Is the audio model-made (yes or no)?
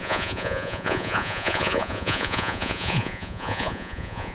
yes